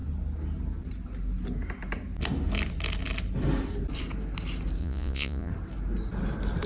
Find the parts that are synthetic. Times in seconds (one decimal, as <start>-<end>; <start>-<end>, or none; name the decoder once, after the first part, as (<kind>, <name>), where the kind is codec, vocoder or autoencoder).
4.8-5.5 (vocoder, Vocos)